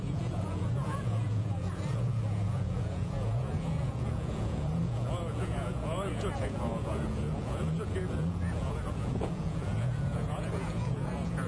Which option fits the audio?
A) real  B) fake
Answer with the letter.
B